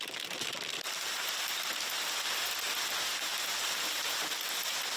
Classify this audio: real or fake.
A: fake